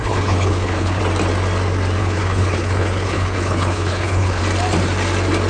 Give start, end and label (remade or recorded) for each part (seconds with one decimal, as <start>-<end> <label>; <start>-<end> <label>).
0.0-1.0 remade; 1.0-2.0 recorded; 2.0-4.4 remade; 4.4-5.5 recorded